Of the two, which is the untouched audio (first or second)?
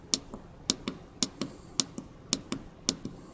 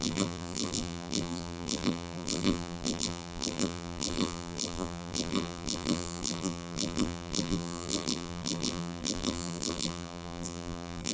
first